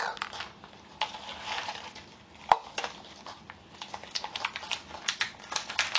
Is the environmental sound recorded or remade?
recorded